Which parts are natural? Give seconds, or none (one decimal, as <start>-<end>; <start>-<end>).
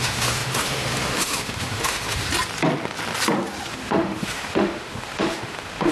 2.3-3.7